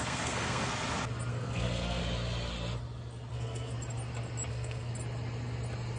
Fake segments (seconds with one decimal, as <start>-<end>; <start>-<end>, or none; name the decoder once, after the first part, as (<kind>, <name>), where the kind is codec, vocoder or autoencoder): 0.0-0.7 (codec, SNAC); 1.3-2.0; 3.3-3.7; 4.5-4.9